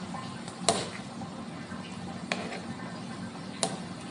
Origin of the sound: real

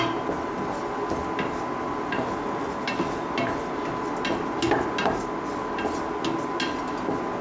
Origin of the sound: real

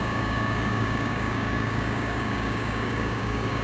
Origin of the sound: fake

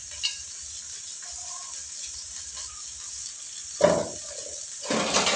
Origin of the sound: real